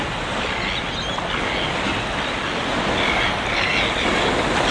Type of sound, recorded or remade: recorded